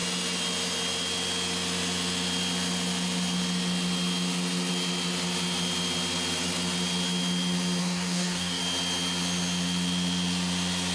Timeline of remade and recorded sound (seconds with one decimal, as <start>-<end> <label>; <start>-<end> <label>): 0.0-7.8 recorded; 7.8-8.6 remade; 8.6-10.9 recorded